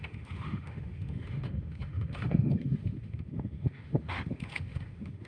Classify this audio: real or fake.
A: fake